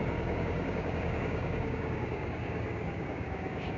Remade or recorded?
remade